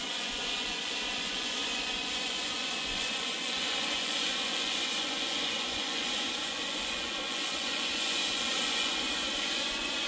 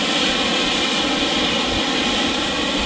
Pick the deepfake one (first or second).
first